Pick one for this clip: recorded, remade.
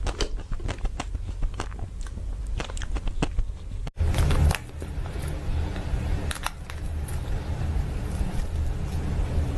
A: recorded